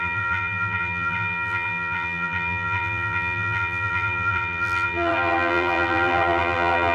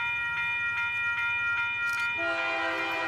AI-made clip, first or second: first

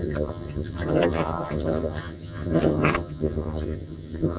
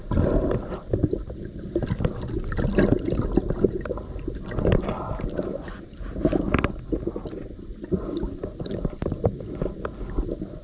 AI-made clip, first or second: first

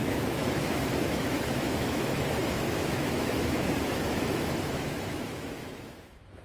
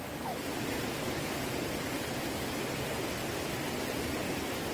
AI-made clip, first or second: first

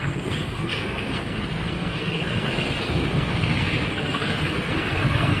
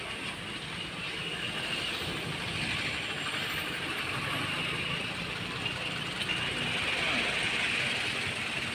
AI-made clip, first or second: first